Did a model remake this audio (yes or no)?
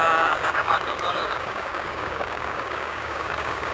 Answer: yes